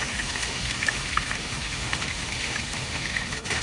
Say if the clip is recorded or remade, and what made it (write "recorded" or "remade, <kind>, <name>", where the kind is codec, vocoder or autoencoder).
remade, autoencoder, DAC-VAE